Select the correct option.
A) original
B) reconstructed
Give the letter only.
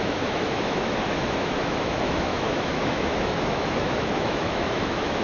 B